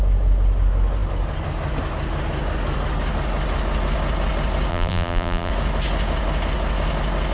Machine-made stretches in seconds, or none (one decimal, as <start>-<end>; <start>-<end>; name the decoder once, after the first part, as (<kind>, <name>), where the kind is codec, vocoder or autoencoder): 4.7-5.5 (vocoder, BigVGAN v2)